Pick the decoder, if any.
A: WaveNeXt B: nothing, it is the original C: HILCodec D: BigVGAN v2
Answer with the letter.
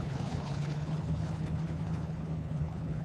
C